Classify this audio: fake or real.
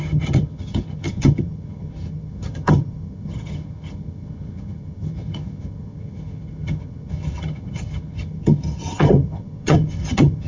fake